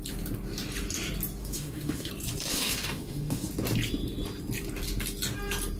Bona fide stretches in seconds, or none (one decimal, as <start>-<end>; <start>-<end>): 0.0-1.4; 2.1-2.5; 3.5-5.8